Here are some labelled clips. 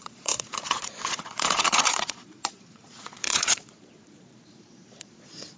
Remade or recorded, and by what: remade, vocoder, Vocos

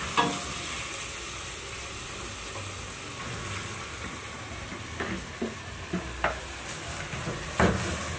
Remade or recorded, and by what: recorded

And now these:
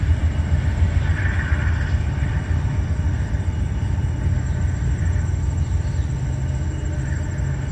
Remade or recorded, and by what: recorded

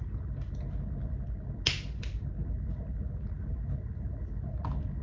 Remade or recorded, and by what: recorded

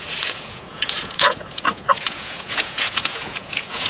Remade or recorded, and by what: remade, vocoder, Vocos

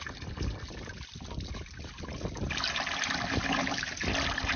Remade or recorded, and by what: recorded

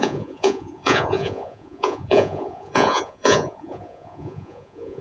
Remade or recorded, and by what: remade, vocoder, Vocos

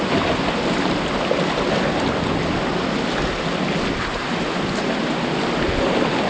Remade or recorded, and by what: recorded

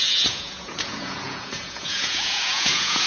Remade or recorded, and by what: remade, vocoder, Vocos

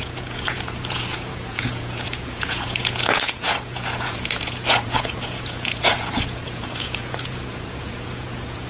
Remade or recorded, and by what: remade, vocoder, Vocos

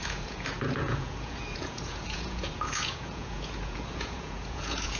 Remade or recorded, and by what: remade, vocoder, Vocos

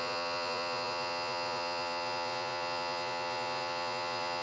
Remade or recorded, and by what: remade, vocoder, Vocos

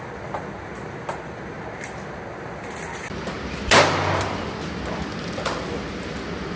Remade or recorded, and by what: recorded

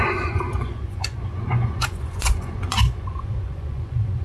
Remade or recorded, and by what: remade, vocoder, Vocos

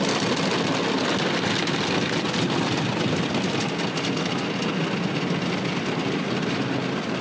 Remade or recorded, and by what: recorded